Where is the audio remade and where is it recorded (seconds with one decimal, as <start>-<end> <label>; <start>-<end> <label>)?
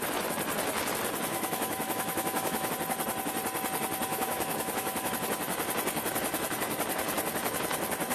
0.0-1.3 recorded; 1.3-2.7 remade; 2.7-4.1 recorded; 4.1-5.1 remade; 5.1-8.1 recorded